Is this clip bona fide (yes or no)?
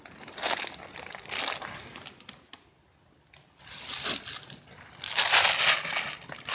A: yes